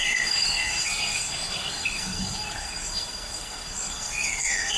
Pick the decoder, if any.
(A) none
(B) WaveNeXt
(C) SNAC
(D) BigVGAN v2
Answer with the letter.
C